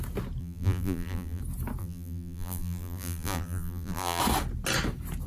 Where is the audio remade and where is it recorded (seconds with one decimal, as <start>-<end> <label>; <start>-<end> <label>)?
0.0-0.4 recorded; 0.4-1.4 remade; 1.4-1.8 recorded; 1.8-4.2 remade; 4.2-5.3 recorded